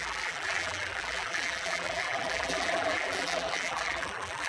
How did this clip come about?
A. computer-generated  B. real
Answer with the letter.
A